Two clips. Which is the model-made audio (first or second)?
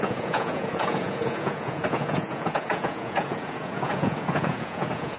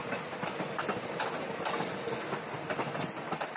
first